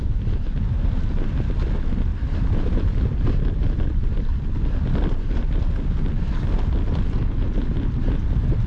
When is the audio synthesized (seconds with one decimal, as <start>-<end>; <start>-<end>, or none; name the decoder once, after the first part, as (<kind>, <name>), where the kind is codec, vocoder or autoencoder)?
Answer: 2.1-5.4 (vocoder, BigVGAN v2)